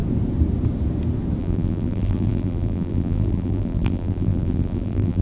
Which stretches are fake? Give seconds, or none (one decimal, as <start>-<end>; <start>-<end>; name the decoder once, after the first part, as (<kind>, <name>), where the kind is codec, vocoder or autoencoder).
1.4-5.2 (vocoder, BigVGAN v2)